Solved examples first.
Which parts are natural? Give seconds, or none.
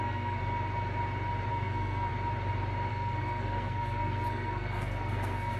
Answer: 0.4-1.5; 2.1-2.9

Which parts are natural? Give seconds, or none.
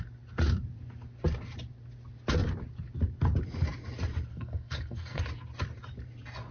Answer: 0.0-4.3; 5.2-6.5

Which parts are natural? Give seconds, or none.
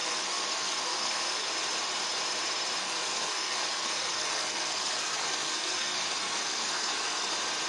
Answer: 1.5-2.8; 7.3-7.7